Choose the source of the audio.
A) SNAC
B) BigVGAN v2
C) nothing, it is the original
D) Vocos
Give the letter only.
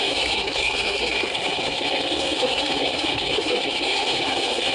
A